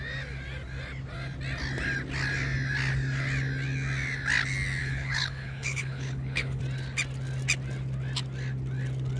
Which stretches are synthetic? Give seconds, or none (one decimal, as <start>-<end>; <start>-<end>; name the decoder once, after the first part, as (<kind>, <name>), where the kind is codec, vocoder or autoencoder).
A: 4.8-6.6 (codec, HILCodec)